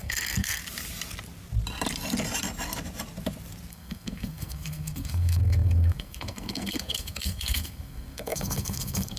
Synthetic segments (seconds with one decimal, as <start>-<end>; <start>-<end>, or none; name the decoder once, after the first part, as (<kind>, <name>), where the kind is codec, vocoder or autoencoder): 0.0-0.6 (codec, SNAC); 3.7-9.2